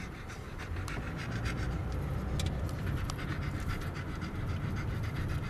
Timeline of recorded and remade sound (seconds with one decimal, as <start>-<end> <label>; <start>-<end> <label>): 0.0-5.5 recorded